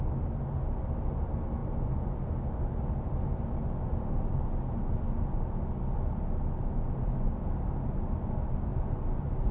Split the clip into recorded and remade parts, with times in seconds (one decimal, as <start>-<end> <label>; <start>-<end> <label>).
0.0-9.5 recorded